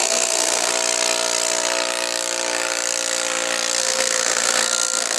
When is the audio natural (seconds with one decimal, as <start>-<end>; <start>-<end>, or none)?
0.7-3.8